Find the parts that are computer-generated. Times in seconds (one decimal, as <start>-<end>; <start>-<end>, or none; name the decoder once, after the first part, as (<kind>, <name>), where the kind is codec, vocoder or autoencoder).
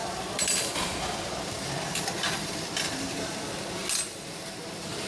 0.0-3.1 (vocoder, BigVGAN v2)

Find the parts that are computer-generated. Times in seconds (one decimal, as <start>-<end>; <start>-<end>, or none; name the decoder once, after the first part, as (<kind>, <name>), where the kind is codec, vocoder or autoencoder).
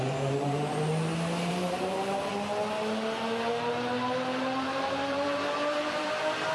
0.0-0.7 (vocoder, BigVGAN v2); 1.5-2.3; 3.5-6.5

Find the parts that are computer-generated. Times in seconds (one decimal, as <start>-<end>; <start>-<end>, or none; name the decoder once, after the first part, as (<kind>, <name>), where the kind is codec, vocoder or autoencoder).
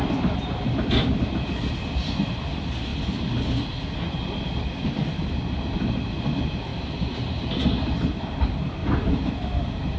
6.7-7.4 (vocoder, BigVGAN v2); 8.8-9.3